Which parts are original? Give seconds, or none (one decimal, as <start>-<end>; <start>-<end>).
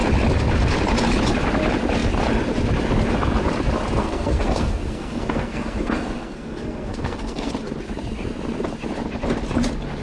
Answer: 0.0-4.0; 7.5-10.0